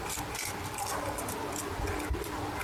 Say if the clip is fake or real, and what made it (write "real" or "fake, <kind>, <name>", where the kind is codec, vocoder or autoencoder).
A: real